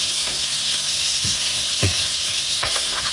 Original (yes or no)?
no